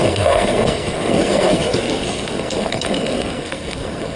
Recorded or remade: remade